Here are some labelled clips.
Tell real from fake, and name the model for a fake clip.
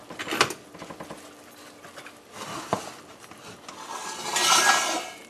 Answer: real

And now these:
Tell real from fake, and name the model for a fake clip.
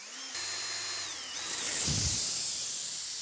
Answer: real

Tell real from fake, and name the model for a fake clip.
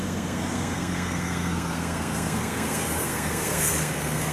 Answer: fake, codec, SNAC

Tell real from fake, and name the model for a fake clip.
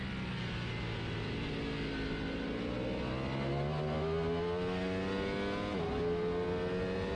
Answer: real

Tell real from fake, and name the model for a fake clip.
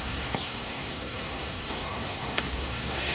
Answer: fake, codec, SNAC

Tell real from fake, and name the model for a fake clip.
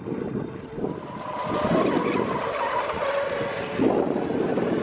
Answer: real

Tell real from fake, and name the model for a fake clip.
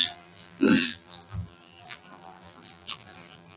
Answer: fake, vocoder, BigVGAN v2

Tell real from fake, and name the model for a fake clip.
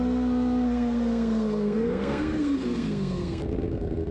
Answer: fake, codec, SNAC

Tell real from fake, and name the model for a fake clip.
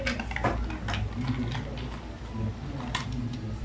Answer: real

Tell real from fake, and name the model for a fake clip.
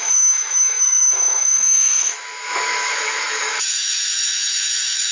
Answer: fake, autoencoder, DAC-VAE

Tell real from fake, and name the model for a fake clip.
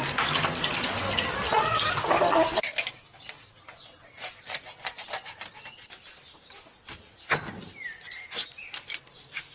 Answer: real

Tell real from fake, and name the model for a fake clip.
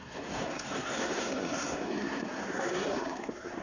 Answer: fake, codec, SNAC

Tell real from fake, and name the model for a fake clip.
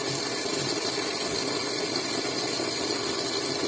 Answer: real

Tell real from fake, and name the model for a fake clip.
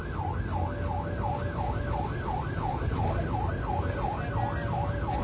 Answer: real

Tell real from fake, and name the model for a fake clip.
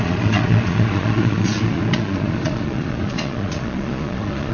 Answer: fake, vocoder, Vocos